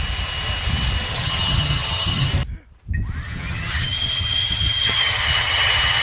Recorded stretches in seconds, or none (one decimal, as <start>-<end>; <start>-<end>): 0.0-1.1; 2.3-3.2